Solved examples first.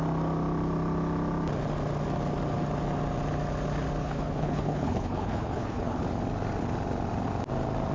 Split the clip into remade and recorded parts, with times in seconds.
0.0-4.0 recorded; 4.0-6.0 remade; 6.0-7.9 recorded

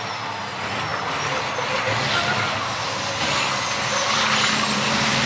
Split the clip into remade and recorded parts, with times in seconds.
0.0-5.3 recorded